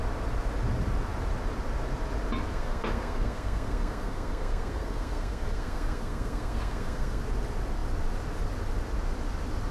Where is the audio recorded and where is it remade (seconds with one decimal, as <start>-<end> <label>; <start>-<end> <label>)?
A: 0.0-2.5 recorded; 2.5-7.2 remade; 7.2-9.7 recorded